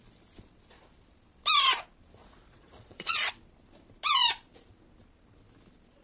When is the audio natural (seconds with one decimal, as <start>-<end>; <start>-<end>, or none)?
0.0-2.2; 3.3-6.0